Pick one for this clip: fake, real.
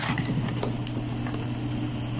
real